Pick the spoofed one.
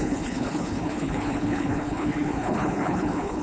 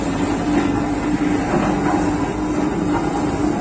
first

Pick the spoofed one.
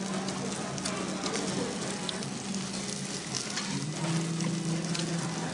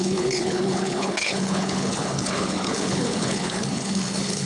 second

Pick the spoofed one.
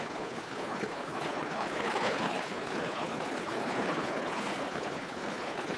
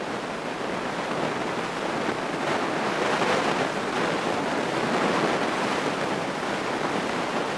first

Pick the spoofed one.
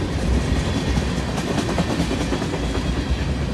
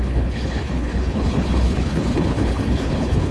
second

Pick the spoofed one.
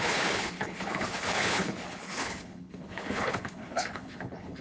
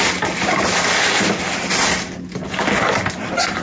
first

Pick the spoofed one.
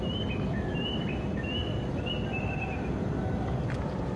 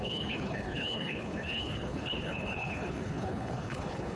second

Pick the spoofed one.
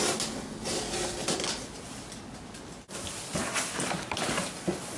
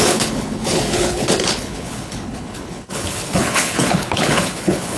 second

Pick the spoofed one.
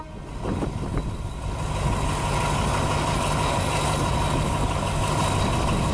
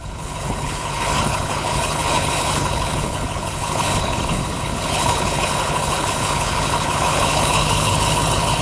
second